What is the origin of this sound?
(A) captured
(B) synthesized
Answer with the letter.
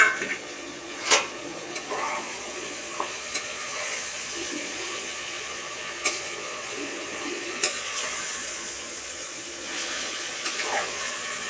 B